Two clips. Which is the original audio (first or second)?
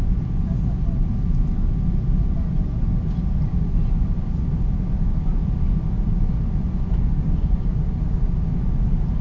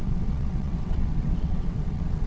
first